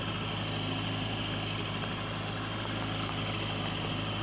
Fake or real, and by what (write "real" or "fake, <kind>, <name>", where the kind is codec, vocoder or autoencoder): real